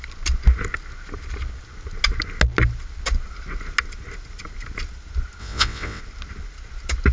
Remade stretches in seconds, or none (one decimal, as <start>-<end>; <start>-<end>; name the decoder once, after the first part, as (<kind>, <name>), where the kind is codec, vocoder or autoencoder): 5.4-6.0 (vocoder, WaveNeXt)